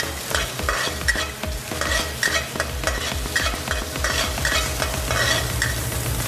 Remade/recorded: recorded